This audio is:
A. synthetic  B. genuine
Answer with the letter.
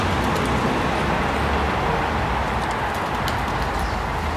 B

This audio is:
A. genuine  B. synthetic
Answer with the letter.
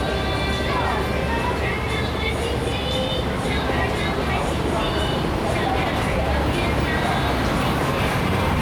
A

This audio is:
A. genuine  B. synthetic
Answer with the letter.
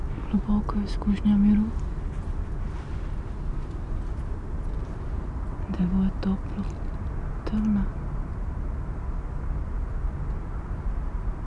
A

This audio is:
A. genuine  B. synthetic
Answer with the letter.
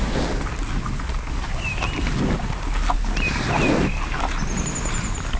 A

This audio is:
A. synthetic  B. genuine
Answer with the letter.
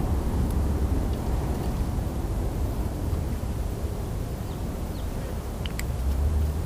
A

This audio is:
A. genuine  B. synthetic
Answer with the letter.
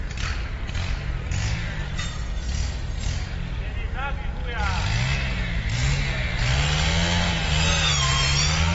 A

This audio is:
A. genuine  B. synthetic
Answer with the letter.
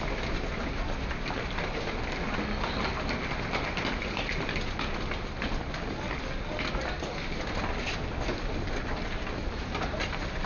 A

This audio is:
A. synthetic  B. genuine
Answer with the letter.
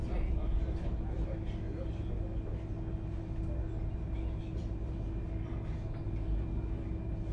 B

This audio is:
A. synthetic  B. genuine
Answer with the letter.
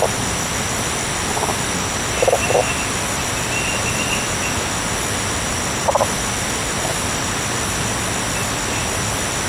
B